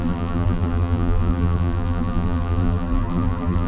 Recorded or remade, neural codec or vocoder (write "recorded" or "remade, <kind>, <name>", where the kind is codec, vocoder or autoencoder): remade, vocoder, BigVGAN v2